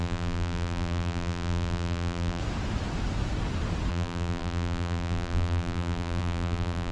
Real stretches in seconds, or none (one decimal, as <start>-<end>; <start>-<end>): 2.4-3.9